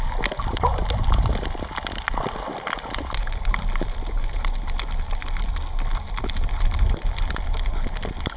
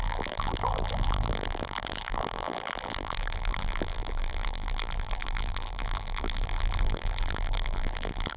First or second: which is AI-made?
second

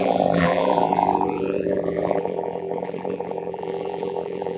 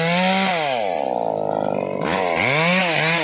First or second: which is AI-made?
first